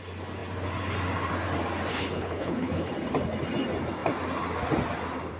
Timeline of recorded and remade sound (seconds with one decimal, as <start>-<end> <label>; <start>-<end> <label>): 0.0-1.9 recorded; 1.9-2.9 remade; 2.9-5.4 recorded